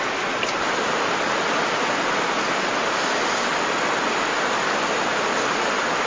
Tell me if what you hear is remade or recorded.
recorded